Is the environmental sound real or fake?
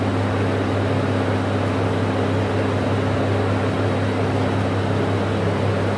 real